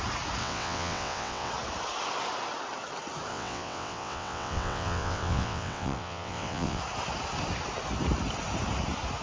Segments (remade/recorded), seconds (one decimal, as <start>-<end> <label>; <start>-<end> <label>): 0.0-0.4 recorded; 0.4-1.5 remade; 1.5-3.3 recorded; 3.3-6.8 remade; 6.8-9.2 recorded